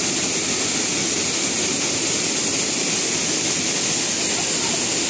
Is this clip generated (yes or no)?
no